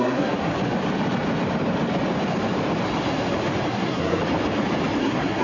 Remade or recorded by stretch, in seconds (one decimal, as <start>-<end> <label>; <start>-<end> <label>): 0.0-0.5 remade; 0.5-3.7 recorded; 3.7-4.2 remade; 4.2-5.0 recorded; 5.0-5.4 remade